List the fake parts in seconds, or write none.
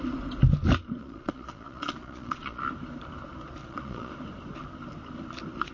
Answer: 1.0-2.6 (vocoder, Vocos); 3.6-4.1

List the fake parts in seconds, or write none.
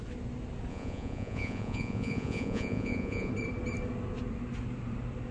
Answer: 0.7-3.3 (vocoder, Vocos)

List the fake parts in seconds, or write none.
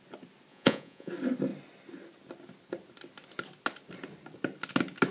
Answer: 0.5-1.1 (vocoder, Vocos)